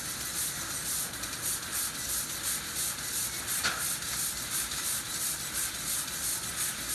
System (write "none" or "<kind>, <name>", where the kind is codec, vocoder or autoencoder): none